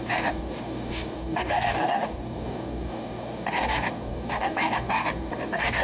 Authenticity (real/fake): fake